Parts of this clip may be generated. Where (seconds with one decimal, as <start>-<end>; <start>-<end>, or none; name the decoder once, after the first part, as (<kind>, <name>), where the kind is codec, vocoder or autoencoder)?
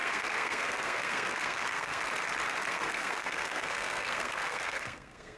0.0-2.0 (codec, SNAC); 2.7-5.4